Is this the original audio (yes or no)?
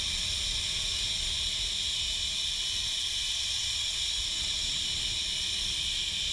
yes